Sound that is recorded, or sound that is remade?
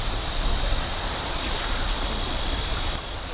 recorded